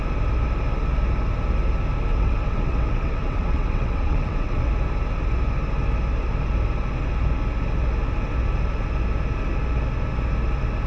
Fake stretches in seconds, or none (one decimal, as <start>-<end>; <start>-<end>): 2.1-4.7